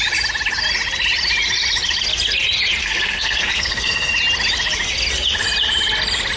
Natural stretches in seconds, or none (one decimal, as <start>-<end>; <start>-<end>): 0.0-2.8; 4.1-6.4